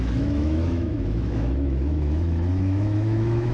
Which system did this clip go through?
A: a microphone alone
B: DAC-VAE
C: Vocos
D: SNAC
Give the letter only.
B